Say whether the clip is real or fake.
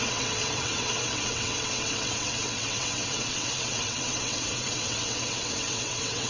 fake